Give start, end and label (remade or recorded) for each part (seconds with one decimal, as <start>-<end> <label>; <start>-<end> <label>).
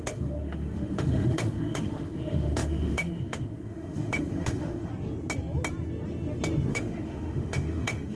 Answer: 0.0-4.9 remade; 4.9-6.7 recorded; 6.7-8.1 remade